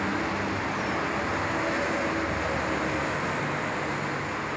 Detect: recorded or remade recorded